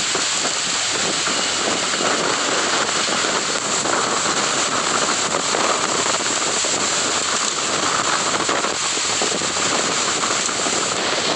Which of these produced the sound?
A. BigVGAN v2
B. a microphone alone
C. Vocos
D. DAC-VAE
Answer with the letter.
B